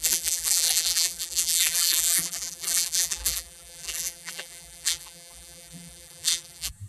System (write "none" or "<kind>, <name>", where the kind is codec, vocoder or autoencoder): vocoder, BigVGAN v2